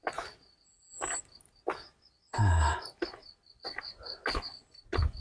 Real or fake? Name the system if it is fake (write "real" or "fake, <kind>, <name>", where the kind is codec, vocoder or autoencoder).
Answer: real